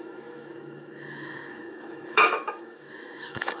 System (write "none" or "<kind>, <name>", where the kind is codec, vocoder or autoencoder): autoencoder, DAC-VAE